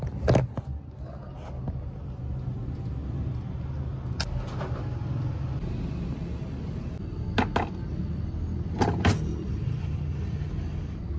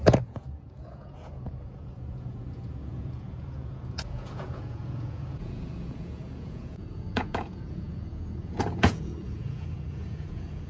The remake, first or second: second